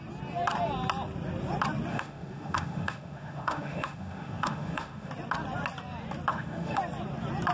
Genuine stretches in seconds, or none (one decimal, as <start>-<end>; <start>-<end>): 0.0-1.9; 5.1-6.3; 6.8-7.5